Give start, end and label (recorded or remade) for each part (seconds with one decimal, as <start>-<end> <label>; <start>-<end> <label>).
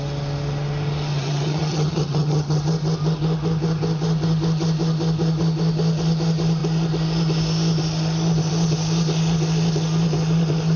0.0-1.1 recorded; 1.1-2.6 remade; 2.6-10.8 recorded